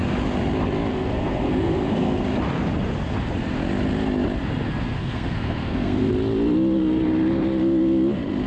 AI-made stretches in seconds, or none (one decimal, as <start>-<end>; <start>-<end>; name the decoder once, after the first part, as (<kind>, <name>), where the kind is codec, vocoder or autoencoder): 0.9-2.2 (codec, SNAC); 4.7-6.1